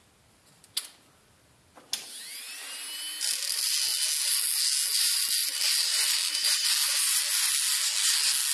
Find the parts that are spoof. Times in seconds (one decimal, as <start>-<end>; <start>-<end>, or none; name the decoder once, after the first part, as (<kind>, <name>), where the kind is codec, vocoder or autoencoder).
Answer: none